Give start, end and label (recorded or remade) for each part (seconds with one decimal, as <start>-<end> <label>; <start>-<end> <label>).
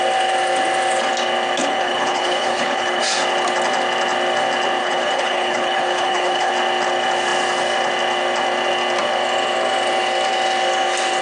0.0-1.6 recorded; 1.6-3.0 remade; 3.0-4.8 recorded; 4.8-6.5 remade; 6.5-11.2 recorded